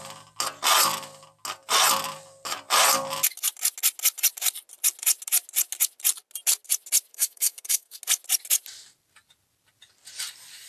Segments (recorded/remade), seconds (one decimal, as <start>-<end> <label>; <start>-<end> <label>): 0.0-7.1 recorded; 7.1-8.0 remade; 8.0-10.7 recorded